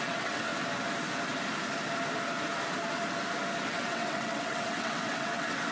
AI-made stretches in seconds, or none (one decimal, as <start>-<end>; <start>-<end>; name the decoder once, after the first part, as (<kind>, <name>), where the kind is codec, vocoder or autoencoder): 0.0-0.5 (vocoder, WaveNeXt); 3.7-5.7